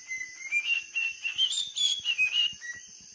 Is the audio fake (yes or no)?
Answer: no